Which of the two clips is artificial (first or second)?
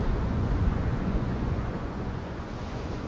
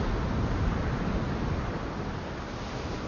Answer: first